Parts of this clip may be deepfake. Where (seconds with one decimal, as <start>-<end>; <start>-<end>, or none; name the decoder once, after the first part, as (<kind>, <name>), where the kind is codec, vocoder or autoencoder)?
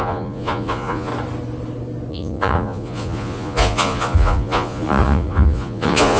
0.0-1.1 (vocoder, Vocos); 2.1-6.2